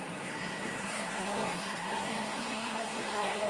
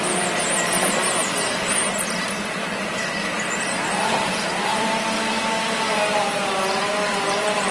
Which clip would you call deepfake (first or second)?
first